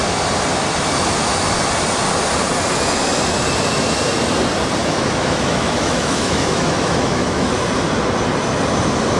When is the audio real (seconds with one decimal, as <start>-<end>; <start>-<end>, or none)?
0.0-4.8; 7.5-9.2